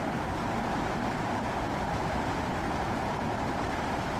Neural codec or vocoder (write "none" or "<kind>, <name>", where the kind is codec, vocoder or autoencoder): none